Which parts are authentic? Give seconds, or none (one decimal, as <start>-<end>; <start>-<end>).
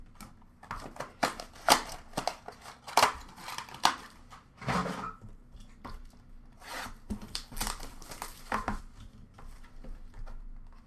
0.0-10.9